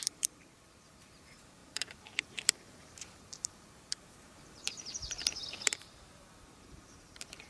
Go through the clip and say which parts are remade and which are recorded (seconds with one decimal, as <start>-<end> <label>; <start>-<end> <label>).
0.0-7.5 remade